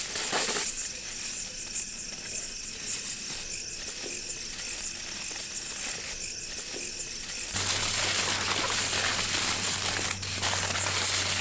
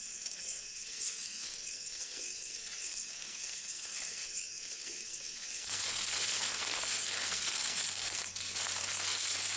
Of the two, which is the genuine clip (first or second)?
first